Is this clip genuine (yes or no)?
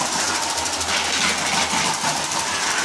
yes